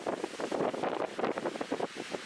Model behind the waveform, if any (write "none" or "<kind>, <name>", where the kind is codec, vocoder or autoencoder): none